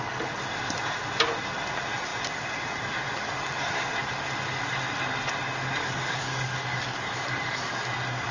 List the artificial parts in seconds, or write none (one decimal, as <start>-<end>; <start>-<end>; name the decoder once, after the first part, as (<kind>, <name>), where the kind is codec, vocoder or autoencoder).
5.8-7.6 (codec, DAC)